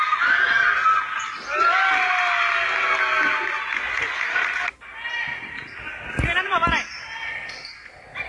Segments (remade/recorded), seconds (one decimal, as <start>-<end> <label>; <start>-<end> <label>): 0.0-8.3 recorded